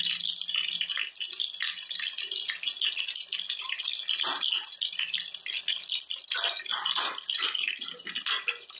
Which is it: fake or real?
real